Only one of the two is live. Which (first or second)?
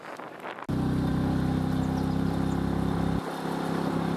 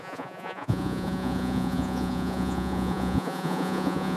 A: first